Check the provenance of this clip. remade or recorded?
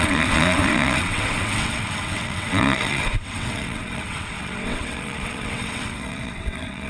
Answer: remade